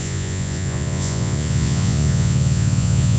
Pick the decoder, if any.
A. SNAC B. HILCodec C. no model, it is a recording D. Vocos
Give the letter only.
D